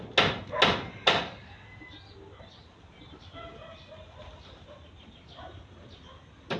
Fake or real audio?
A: real